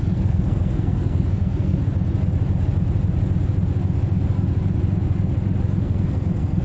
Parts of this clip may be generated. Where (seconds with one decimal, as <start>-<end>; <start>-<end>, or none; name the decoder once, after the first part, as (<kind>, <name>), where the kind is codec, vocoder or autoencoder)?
0.0-1.8 (codec, SNAC); 5.8-6.6